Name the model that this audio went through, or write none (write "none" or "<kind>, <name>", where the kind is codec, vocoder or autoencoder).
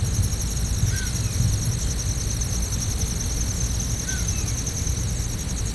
none